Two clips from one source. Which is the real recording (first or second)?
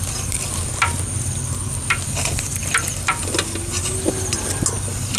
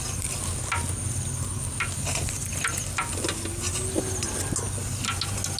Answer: second